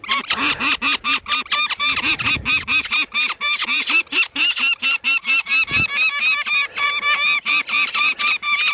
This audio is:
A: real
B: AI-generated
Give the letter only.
A